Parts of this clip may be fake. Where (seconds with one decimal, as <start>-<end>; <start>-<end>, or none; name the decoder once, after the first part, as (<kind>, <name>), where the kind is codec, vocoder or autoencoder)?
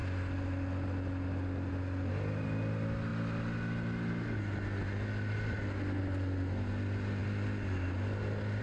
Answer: none